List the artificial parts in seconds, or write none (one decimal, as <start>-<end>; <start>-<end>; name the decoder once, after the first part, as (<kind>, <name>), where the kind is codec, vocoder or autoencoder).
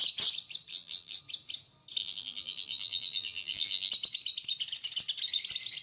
0.7-1.2 (vocoder, BigVGAN v2); 2.0-3.9